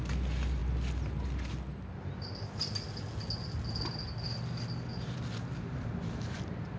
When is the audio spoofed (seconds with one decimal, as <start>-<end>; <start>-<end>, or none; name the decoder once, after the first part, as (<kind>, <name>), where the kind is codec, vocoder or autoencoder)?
none